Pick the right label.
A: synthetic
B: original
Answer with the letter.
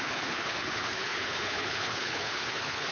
A